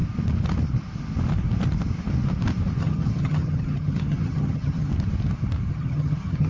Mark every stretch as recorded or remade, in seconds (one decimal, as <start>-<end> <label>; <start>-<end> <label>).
0.0-2.8 recorded; 2.8-4.9 remade; 4.9-5.7 recorded; 5.7-6.5 remade